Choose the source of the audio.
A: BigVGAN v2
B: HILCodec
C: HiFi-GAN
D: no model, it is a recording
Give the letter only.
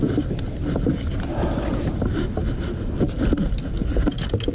D